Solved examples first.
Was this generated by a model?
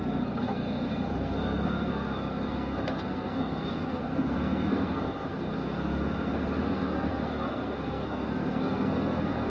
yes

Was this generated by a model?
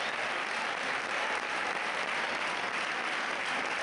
no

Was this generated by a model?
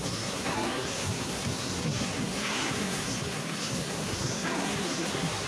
yes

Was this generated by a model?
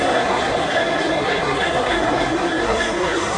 yes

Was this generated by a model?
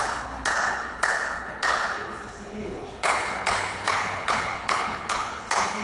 yes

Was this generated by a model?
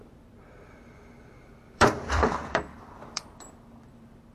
yes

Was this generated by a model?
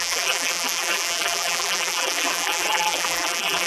yes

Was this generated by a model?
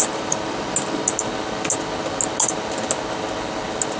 no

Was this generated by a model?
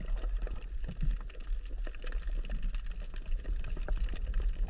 no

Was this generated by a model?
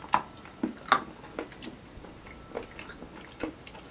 no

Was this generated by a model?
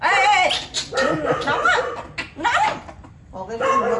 no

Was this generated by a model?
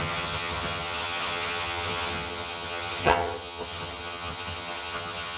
yes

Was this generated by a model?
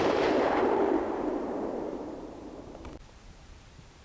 yes